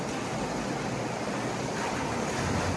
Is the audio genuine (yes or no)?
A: yes